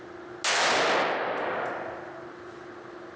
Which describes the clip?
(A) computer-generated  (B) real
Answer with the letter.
B